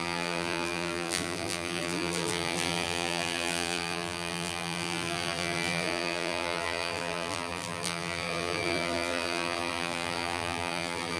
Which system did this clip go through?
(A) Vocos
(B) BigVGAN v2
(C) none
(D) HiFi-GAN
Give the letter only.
B